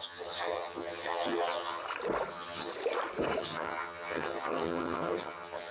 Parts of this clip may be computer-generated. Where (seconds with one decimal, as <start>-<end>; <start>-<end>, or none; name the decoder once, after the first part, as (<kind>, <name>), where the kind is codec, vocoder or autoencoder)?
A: 0.0-1.8 (vocoder, HiFi-GAN); 2.3-2.7; 3.4-5.7